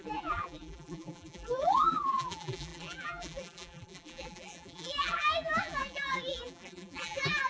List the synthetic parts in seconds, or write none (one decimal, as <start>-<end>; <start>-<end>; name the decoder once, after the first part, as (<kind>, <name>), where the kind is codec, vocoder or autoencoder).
0.0-7.5 (vocoder, BigVGAN v2)